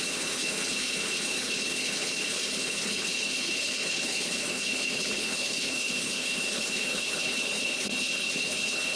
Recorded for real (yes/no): no